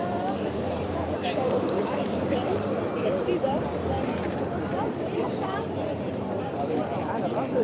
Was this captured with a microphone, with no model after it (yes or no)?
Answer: no